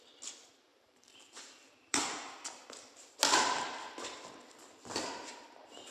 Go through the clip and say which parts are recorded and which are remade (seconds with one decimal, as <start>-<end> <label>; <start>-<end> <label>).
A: 0.0-0.7 recorded; 0.7-2.3 remade; 2.3-5.9 recorded